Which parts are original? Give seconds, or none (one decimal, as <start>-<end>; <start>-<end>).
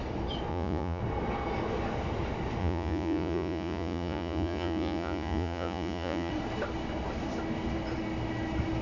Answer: 0.0-0.5; 1.0-2.6; 6.3-8.8